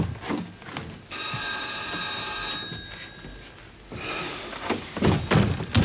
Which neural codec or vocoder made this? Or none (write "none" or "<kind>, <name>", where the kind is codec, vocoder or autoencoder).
none